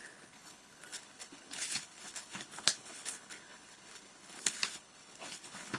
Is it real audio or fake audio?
fake